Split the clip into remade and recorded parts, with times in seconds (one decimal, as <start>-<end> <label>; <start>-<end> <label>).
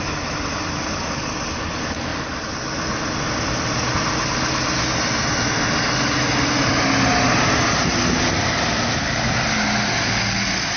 0.0-10.8 recorded